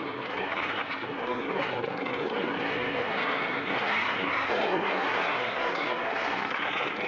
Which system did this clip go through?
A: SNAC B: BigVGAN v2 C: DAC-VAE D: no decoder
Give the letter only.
A